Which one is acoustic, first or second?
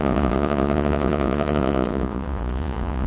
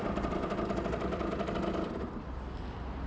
second